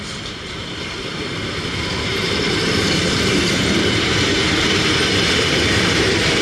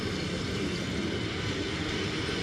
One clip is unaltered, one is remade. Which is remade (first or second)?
first